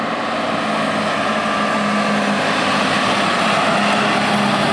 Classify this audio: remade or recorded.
recorded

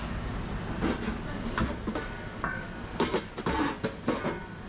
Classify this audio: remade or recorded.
recorded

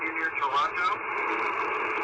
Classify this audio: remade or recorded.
recorded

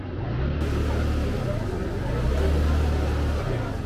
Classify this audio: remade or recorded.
recorded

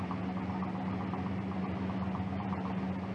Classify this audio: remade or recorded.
recorded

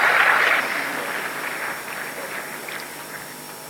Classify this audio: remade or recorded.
remade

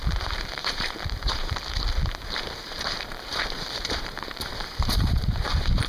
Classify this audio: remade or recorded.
remade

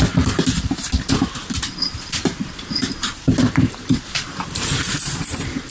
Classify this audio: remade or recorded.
remade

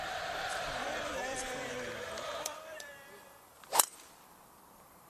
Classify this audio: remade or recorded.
remade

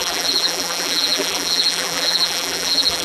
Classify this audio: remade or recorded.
remade